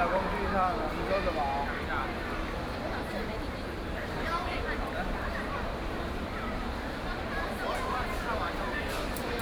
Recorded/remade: remade